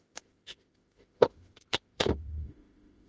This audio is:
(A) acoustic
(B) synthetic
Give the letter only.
B